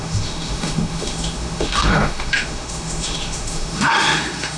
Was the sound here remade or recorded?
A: remade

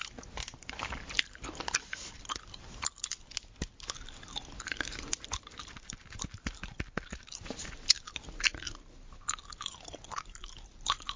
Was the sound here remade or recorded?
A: recorded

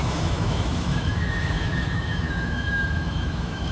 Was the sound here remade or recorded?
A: remade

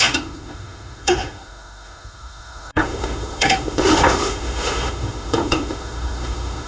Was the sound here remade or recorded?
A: remade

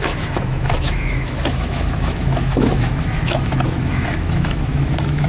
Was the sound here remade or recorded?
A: remade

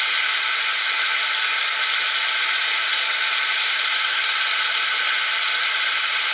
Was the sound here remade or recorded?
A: recorded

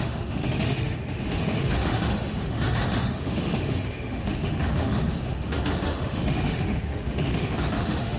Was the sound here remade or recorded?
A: remade